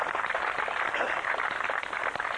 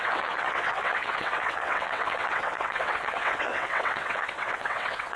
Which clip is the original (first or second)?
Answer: first